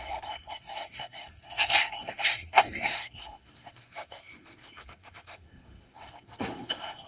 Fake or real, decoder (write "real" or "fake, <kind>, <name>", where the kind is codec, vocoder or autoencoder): fake, codec, SNAC